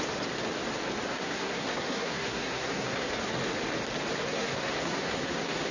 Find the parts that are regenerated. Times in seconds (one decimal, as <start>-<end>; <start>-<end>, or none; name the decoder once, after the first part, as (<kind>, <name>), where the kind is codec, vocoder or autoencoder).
1.1-3.1 (codec, SNAC); 4.2-5.7